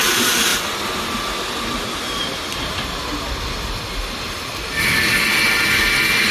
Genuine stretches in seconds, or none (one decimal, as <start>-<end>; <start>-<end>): 0.0-6.3